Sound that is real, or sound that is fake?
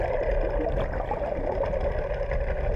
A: real